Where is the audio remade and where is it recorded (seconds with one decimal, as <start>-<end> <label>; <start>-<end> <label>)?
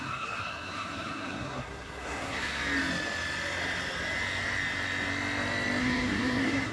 0.0-2.6 remade; 2.6-5.8 recorded; 5.8-6.7 remade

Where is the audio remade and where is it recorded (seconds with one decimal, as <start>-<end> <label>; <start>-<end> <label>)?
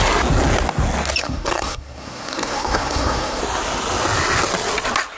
0.0-1.2 recorded; 1.2-3.4 remade; 3.4-5.2 recorded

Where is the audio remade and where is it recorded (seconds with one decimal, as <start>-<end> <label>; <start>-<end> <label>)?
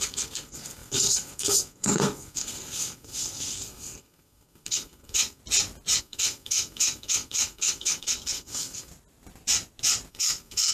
0.0-5.4 remade; 5.4-6.0 recorded; 6.0-8.9 remade; 8.9-10.1 recorded; 10.1-10.7 remade